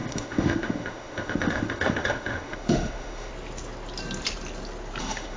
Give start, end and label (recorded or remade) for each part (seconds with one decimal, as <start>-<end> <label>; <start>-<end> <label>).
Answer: 0.0-3.3 remade; 3.3-5.0 recorded; 5.0-5.4 remade